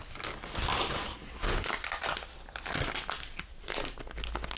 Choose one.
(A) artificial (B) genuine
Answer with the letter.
B